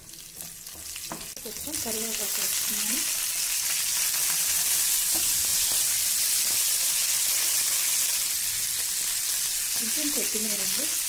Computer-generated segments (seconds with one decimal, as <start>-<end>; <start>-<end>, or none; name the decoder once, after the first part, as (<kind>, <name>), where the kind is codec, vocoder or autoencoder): 5.5-6.9 (vocoder, BigVGAN v2)